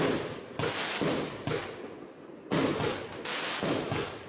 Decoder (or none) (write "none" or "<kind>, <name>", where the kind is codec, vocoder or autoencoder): none